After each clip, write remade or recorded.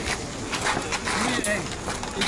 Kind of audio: recorded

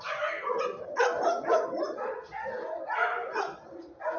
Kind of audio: recorded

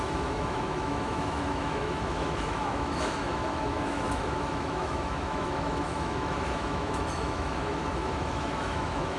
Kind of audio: remade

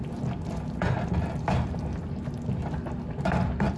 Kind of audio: recorded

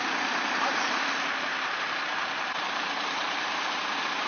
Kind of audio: remade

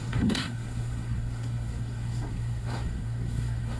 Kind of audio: remade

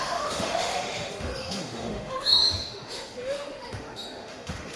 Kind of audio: remade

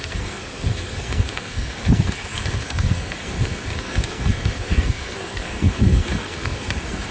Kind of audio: remade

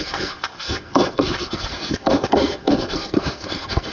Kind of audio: remade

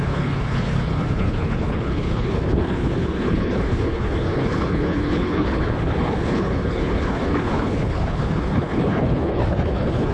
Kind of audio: remade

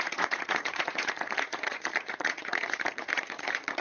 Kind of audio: remade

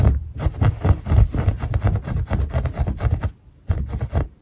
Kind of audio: remade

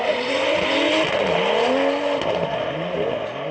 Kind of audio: recorded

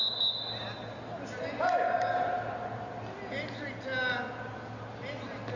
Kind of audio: recorded